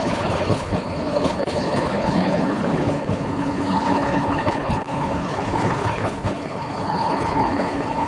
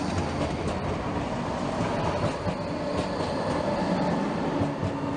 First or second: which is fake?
first